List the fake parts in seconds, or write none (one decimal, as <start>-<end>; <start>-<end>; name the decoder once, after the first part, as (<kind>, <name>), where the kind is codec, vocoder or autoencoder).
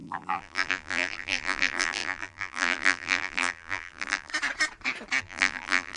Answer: 0.0-4.3 (vocoder, BigVGAN v2); 5.2-6.0